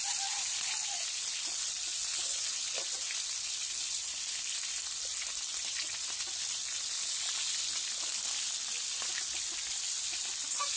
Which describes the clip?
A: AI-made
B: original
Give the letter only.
B